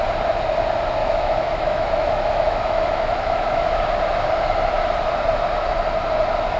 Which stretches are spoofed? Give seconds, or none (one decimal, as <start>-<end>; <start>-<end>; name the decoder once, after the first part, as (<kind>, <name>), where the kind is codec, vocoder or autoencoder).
1.0-3.8 (autoencoder, DAC-VAE)